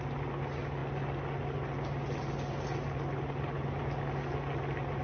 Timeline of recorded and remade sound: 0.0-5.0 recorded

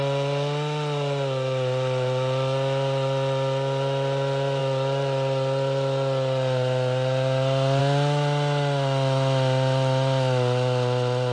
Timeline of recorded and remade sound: 0.0-11.3 recorded

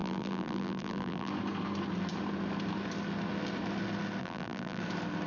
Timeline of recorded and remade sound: 0.0-1.3 remade; 1.3-4.2 recorded; 4.2-4.8 remade; 4.8-5.3 recorded